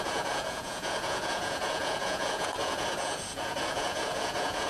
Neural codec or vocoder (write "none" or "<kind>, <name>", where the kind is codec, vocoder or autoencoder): vocoder, Vocos